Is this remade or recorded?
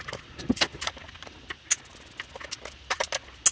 recorded